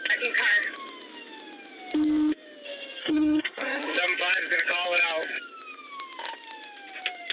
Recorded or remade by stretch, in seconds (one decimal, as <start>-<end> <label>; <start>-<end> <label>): 0.0-3.0 recorded; 3.0-3.8 remade; 3.8-7.3 recorded